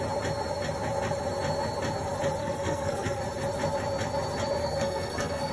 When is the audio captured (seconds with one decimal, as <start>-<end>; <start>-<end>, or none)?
0.0-2.4; 3.2-4.6